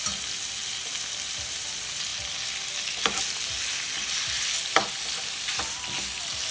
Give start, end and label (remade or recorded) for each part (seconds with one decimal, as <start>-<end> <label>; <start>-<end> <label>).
0.0-6.5 recorded